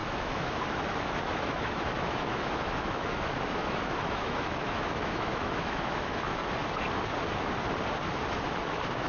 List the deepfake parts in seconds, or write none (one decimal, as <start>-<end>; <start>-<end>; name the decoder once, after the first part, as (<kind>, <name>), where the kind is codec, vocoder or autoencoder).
0.0-6.4 (autoencoder, DAC-VAE); 8.6-9.1

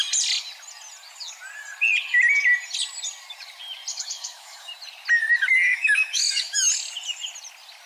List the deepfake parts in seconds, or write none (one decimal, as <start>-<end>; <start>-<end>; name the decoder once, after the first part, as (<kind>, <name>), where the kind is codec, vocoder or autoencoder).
3.9-4.7 (autoencoder, DAC-VAE); 5.7-6.7

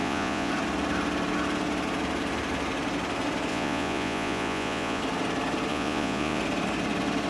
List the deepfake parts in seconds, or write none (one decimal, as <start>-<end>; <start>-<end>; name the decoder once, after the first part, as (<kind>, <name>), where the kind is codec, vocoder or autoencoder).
0.0-0.5 (vocoder, Vocos); 3.5-5.0; 5.7-6.4

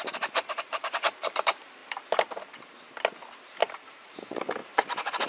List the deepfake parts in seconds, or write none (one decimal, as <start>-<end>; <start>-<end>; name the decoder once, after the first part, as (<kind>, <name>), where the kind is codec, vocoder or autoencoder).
0.0-1.8 (vocoder, BigVGAN v2); 3.6-4.6

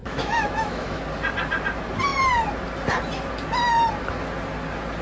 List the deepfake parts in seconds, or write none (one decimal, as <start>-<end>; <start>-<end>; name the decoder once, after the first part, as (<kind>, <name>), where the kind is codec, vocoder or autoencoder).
0.0-1.0 (autoencoder, DAC-VAE)

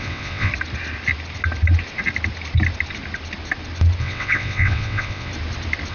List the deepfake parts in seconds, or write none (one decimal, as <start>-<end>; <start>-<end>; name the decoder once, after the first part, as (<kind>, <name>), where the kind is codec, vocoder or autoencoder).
0.0-0.5 (vocoder, WaveNeXt); 4.0-5.3

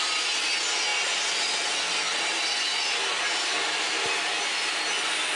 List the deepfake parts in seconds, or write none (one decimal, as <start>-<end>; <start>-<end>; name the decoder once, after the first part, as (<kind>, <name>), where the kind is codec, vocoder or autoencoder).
none